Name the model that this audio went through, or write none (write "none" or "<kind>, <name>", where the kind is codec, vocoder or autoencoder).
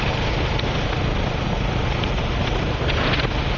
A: none